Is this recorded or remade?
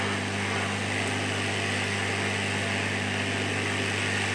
recorded